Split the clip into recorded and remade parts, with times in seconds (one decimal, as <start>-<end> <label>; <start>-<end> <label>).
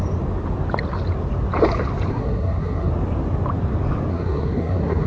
0.0-2.1 recorded; 2.1-2.9 remade; 2.9-4.1 recorded; 4.1-5.1 remade